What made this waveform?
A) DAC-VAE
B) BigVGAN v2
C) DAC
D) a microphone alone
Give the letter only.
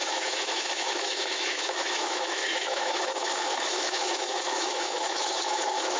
A